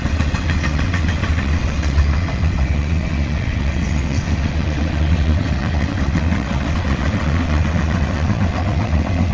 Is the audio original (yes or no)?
no